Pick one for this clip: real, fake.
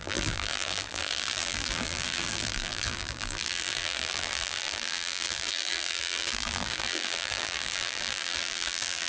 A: fake